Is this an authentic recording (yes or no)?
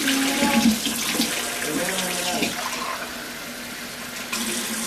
yes